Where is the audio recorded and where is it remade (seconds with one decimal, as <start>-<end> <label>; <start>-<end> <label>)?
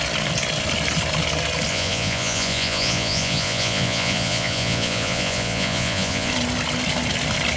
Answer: 0.0-1.7 recorded; 1.7-6.3 remade; 6.3-7.6 recorded